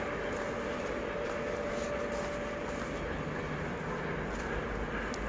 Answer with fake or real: real